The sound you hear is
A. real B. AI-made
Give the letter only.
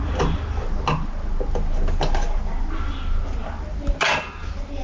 A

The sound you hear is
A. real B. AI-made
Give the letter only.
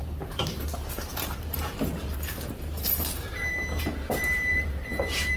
B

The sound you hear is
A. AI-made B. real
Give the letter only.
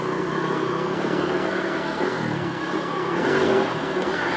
A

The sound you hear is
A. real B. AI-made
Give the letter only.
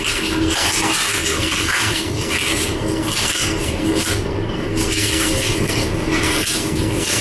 B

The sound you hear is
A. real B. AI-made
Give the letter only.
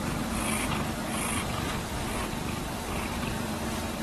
A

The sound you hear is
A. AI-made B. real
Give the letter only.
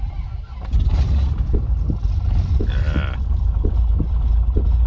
B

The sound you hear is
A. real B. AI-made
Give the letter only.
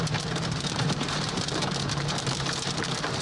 B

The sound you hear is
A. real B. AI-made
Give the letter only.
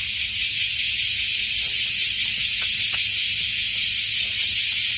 A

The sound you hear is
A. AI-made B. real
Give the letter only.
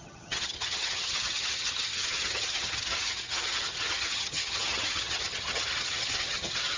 A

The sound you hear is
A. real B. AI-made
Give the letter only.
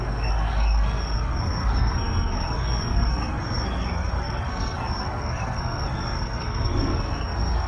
B